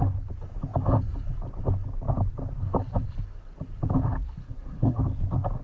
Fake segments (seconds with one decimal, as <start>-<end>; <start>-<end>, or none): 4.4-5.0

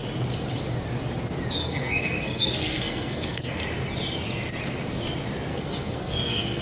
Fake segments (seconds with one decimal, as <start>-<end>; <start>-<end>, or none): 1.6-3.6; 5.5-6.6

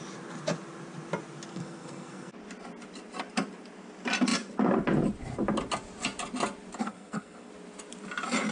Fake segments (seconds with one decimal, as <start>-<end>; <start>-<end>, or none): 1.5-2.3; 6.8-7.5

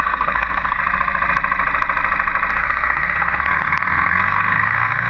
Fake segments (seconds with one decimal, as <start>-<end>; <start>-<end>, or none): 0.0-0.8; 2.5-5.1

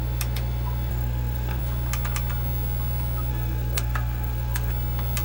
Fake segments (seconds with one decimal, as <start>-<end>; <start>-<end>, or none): 0.9-1.6; 3.3-4.7

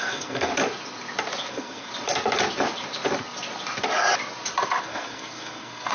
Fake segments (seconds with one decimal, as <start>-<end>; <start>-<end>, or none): 0.0-0.5; 1.5-1.9; 4.8-5.9

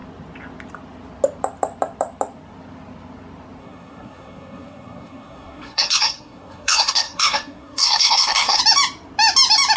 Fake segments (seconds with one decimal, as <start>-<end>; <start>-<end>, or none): 3.6-8.6

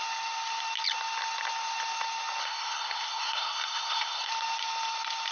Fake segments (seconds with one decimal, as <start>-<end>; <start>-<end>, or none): 2.4-4.3